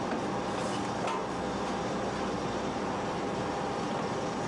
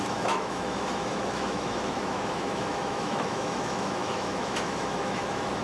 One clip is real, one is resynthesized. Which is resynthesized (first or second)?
second